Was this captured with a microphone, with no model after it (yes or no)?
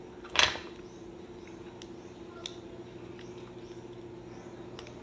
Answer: yes